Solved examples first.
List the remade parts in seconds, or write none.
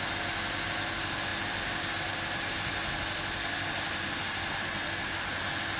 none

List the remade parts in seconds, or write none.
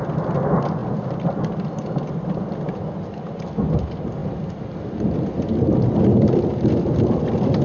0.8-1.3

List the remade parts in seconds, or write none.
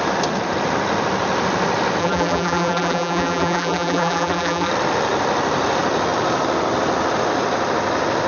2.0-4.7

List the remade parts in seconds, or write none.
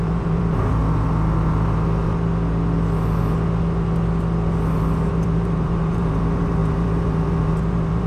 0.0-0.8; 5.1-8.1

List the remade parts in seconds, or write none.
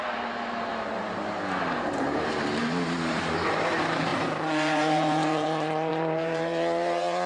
0.0-0.7; 1.6-7.3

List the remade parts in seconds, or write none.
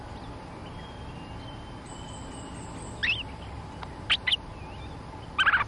none